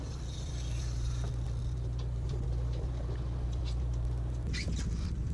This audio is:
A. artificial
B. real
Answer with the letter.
A